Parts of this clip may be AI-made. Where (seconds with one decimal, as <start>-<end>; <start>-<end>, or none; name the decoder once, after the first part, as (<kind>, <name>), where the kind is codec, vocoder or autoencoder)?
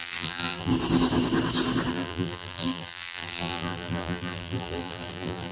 0.0-0.7 (vocoder, BigVGAN v2); 1.9-5.5